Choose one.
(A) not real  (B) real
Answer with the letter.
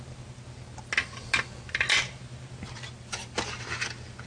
B